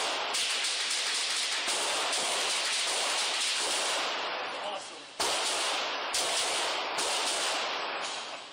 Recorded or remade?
recorded